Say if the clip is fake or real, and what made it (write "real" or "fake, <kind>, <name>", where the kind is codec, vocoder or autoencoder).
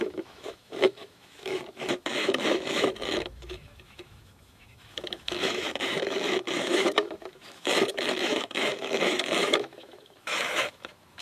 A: fake, autoencoder, DAC-VAE